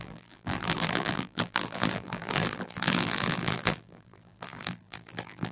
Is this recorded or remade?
remade